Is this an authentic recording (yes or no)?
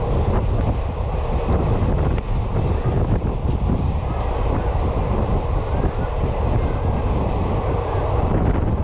yes